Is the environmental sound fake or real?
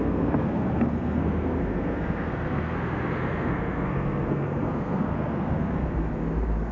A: fake